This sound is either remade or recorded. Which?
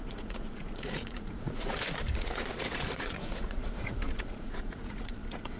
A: remade